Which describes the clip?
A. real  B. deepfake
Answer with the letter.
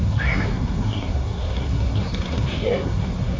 B